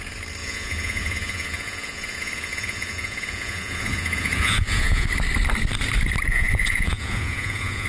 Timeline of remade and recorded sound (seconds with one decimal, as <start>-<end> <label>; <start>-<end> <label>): 0.0-0.4 recorded; 0.4-5.1 remade; 5.1-6.3 recorded; 6.3-7.9 remade

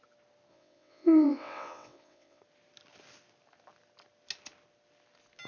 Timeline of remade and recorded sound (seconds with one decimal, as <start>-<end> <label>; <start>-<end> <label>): 0.0-0.5 recorded; 0.5-2.4 remade; 2.4-5.5 recorded

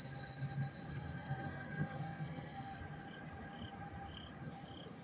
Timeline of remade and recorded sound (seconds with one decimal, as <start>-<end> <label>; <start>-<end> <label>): 0.0-0.9 recorded; 0.9-2.8 remade; 2.8-5.0 recorded

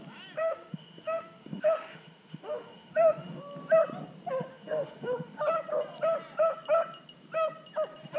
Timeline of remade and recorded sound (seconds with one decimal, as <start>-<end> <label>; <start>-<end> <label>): 0.0-0.4 recorded; 0.4-3.4 remade; 3.4-4.5 recorded; 4.5-5.4 remade; 5.4-8.2 recorded

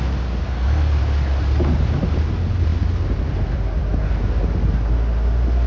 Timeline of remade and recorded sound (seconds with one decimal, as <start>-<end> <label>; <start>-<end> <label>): 0.0-0.4 recorded; 0.4-1.0 remade; 1.0-5.7 recorded

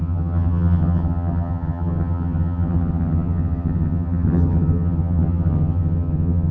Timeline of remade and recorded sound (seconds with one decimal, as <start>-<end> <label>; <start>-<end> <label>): 0.0-6.5 remade